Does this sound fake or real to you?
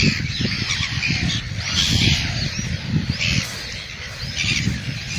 fake